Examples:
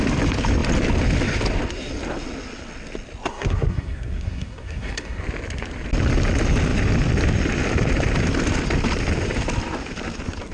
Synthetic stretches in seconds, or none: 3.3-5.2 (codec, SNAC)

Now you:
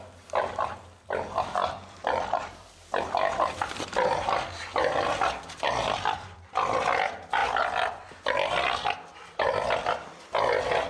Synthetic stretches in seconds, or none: 0.0-7.4 (vocoder, BigVGAN v2); 8.7-10.9

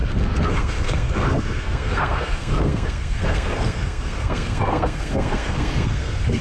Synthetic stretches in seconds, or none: 0.0-6.4 (codec, SNAC)

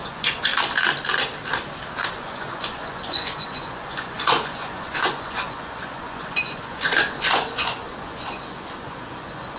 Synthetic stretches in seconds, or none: 0.0-0.5 (vocoder, Vocos); 2.1-9.6

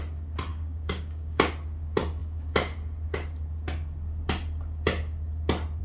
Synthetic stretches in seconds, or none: 0.5-1.5 (codec, DAC)

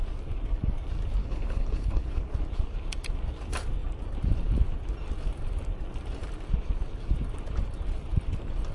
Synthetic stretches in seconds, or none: 1.2-2.3 (codec, HILCodec)

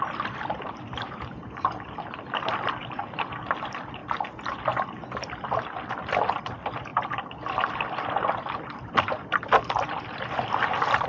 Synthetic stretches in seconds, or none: 0.0-4.0 (vocoder, BigVGAN v2); 5.9-6.9; 7.7-11.1